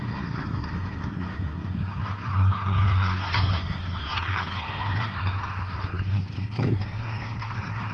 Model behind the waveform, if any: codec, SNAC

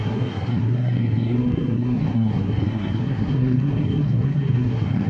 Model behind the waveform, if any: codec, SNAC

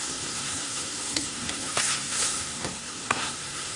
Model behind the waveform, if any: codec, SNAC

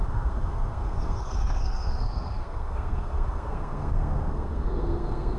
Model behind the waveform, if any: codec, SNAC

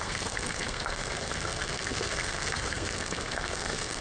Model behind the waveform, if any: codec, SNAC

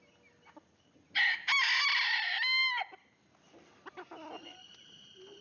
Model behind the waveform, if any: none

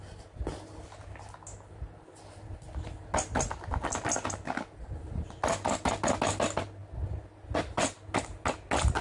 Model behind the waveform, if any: none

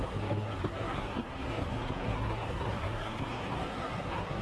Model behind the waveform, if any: codec, SNAC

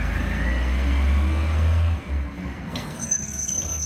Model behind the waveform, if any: codec, SNAC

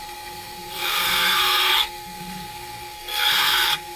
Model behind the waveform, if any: codec, SNAC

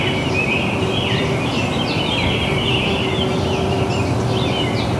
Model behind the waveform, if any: none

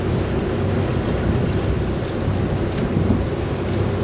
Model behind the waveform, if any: none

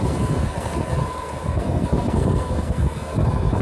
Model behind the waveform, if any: codec, SNAC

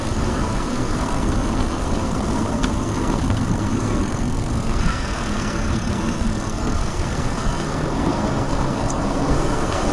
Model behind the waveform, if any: codec, SNAC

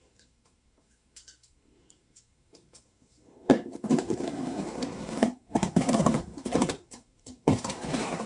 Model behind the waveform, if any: codec, SNAC